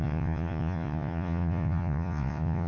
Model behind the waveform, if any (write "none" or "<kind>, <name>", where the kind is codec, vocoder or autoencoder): vocoder, Vocos